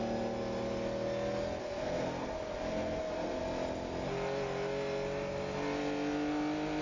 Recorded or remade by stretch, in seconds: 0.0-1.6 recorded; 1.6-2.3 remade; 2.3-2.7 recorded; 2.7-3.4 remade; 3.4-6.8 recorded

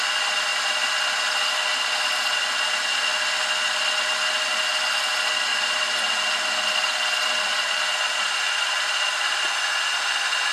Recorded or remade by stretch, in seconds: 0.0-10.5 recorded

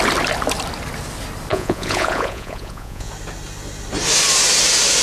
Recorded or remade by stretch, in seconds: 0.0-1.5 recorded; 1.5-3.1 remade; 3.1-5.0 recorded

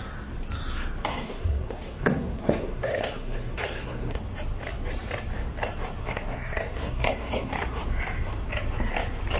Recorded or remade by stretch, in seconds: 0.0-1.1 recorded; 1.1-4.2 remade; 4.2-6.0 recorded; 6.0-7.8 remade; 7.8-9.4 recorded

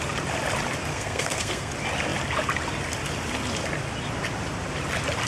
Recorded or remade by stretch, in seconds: 0.0-0.9 recorded; 0.9-1.7 remade; 1.7-5.3 recorded